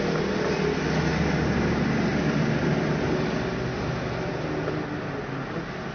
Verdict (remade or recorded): recorded